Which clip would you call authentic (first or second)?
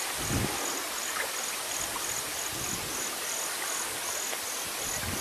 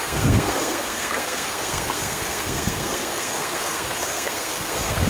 first